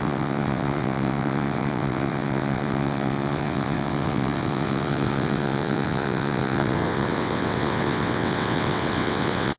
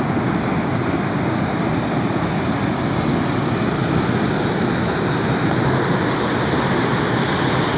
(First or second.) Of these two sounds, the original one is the second